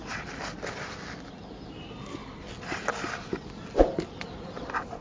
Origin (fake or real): real